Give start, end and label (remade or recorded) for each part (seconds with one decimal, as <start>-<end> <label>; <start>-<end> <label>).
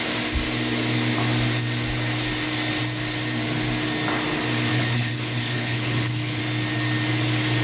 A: 0.0-4.7 recorded; 4.7-6.4 remade; 6.4-7.6 recorded